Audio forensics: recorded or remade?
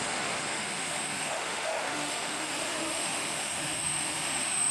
remade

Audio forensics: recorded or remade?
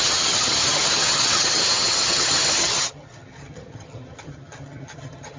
remade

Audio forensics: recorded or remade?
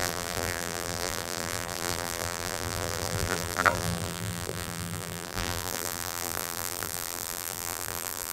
remade